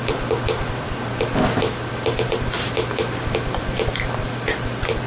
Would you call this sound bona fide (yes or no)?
no